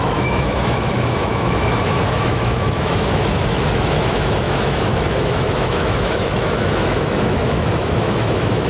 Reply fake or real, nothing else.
fake